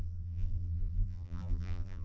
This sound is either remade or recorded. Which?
remade